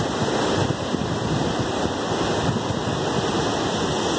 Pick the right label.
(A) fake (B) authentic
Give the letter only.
B